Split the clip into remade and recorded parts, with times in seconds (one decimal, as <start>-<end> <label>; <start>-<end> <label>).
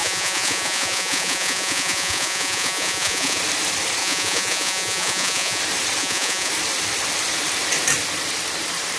0.0-3.4 remade; 3.4-4.0 recorded; 4.0-5.6 remade; 5.6-6.0 recorded; 6.0-6.5 remade; 6.5-9.0 recorded